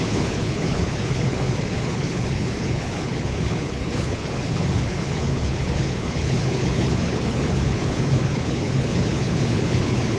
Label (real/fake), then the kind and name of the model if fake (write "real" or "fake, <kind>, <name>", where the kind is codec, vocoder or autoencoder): fake, codec, HILCodec